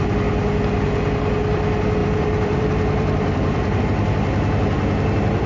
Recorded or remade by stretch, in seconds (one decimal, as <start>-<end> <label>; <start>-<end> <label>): 0.0-2.0 recorded; 2.0-3.8 remade; 3.8-5.5 recorded

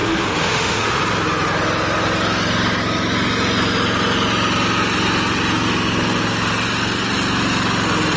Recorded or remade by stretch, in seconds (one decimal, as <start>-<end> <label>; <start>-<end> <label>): 0.0-1.0 remade; 1.0-8.2 recorded

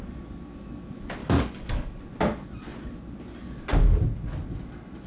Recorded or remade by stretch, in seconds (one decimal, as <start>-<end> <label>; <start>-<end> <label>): 0.0-1.2 recorded; 1.2-2.0 remade; 2.0-5.1 recorded